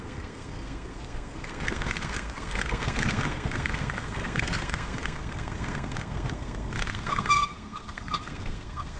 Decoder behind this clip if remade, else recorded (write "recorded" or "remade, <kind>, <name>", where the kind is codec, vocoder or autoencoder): remade, codec, SNAC